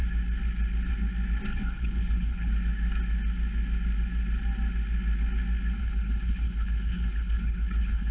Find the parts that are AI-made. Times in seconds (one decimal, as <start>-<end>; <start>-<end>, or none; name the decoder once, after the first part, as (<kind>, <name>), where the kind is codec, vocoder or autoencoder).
1.5-2.5 (codec, HILCodec); 5.8-8.1